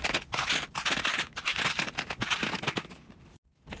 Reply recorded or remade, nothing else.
recorded